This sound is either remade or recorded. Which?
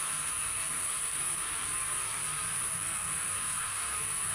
remade